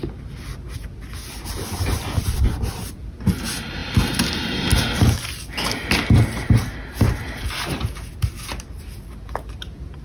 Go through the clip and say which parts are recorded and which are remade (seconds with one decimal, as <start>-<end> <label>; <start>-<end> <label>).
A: 0.0-10.0 recorded